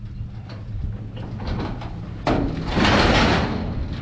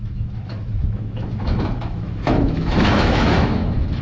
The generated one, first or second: second